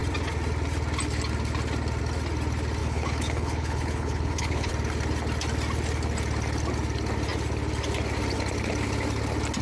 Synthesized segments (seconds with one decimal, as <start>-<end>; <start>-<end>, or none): 2.8-4.7